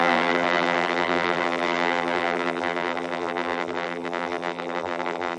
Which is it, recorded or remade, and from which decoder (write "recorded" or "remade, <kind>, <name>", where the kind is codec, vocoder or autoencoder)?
remade, vocoder, BigVGAN v2